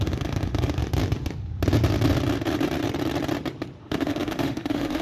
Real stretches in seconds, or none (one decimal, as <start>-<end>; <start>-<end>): 0.8-3.8